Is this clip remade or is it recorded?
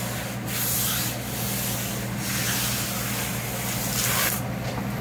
recorded